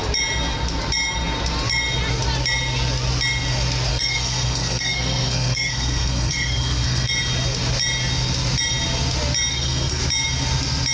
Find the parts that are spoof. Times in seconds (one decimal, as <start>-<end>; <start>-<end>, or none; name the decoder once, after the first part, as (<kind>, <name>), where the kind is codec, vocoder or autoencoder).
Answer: 3.9-7.1 (codec, SNAC); 9.5-10.0

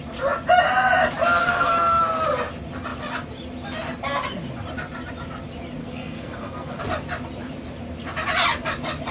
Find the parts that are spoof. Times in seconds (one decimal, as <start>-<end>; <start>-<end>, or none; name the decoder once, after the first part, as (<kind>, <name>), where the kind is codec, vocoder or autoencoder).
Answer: 1.4-2.0 (codec, SNAC); 5.8-6.8